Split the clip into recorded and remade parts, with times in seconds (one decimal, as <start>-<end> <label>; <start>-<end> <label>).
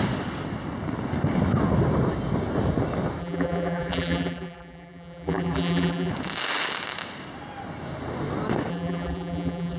0.0-3.2 recorded; 3.2-6.1 remade; 6.1-8.7 recorded; 8.7-9.8 remade